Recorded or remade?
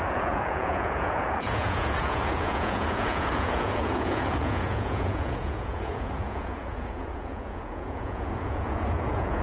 remade